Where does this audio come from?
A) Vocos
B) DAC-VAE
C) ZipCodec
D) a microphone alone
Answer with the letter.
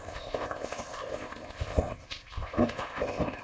C